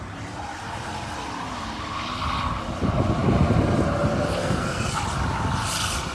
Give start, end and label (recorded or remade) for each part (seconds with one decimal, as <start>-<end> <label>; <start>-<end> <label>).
0.0-4.4 recorded; 4.4-5.0 remade; 5.0-6.1 recorded